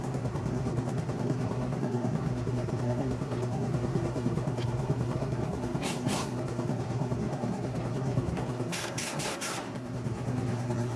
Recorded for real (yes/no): no